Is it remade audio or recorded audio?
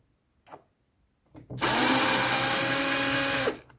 recorded